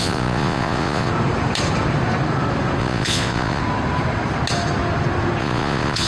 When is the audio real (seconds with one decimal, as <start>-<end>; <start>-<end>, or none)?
1.1-2.8; 3.6-5.4